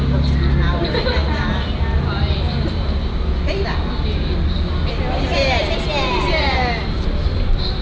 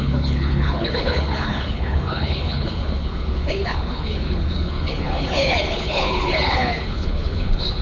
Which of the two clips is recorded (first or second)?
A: first